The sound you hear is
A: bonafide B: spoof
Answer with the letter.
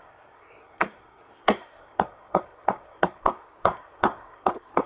B